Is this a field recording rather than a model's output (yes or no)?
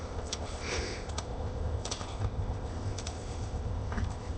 no